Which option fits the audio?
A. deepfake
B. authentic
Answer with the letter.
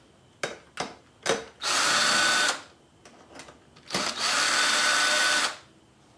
B